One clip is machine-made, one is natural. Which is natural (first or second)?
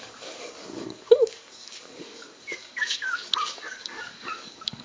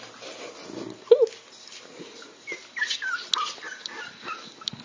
second